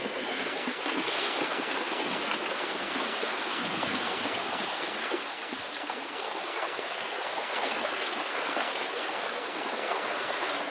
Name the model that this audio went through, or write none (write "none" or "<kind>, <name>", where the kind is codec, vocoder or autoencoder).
codec, SNAC